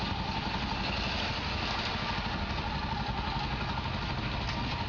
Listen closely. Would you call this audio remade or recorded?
recorded